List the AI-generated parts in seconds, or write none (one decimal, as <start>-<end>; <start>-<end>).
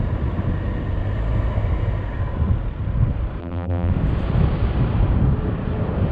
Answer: 3.4-3.9